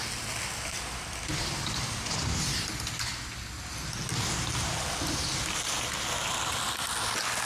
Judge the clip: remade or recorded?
recorded